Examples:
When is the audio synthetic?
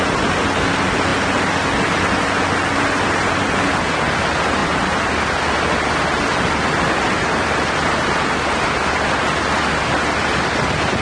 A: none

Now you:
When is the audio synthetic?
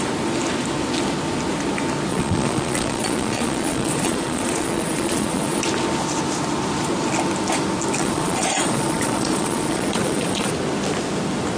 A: 2.1-5.6; 8.0-10.5